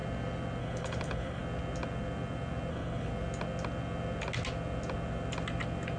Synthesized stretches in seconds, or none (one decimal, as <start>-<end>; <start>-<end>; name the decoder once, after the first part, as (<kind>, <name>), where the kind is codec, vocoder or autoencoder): 0.6-1.4 (codec, HILCodec); 2.7-3.1

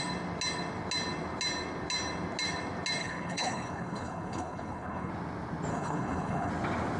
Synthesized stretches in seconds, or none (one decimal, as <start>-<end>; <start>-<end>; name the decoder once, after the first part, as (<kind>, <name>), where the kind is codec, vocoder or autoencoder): 3.0-5.1 (codec, HILCodec); 5.7-6.5